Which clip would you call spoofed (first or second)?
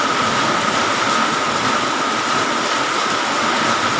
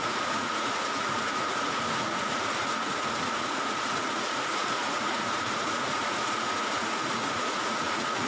second